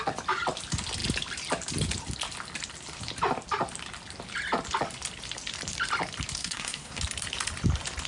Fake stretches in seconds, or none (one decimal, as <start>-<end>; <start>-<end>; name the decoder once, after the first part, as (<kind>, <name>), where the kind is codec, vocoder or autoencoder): 6.4-7.0 (codec, SNAC)